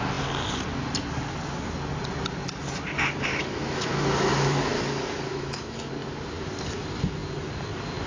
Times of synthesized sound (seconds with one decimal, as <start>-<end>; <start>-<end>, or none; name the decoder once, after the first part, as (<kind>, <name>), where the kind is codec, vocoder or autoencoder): 3.3-4.6 (autoencoder, DAC-VAE); 5.3-5.9